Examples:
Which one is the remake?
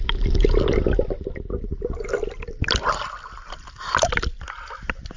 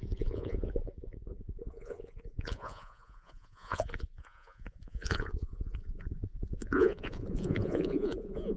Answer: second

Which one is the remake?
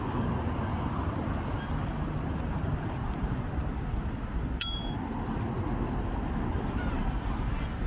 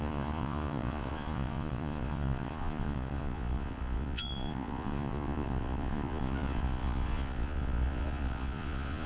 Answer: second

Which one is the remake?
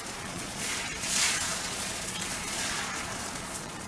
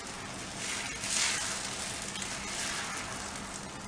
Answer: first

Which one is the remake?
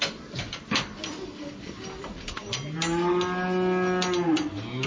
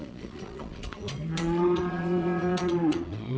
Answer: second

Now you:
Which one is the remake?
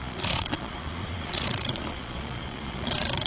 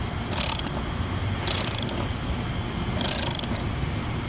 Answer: first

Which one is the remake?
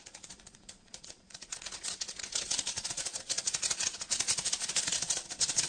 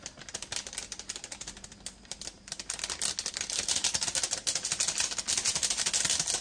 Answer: first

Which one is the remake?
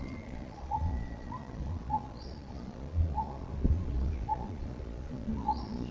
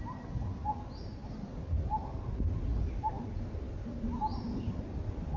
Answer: first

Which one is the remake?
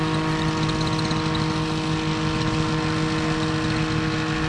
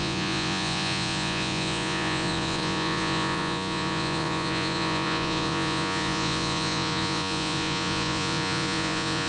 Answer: second